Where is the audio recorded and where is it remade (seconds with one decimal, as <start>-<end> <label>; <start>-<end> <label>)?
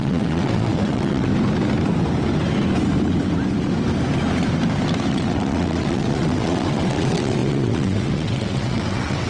0.0-1.3 remade; 1.3-5.1 recorded; 5.1-9.3 remade